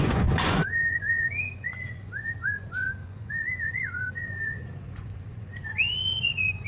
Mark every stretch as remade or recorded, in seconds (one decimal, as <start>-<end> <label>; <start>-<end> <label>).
0.0-6.7 remade